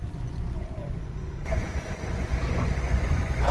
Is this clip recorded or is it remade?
remade